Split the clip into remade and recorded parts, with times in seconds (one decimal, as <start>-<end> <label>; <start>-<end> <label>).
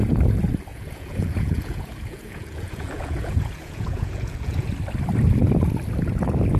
0.0-0.7 recorded; 0.7-4.7 remade; 4.7-6.6 recorded